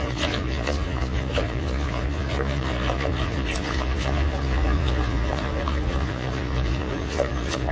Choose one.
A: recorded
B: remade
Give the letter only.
B